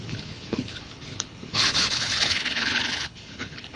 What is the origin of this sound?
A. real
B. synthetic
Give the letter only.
B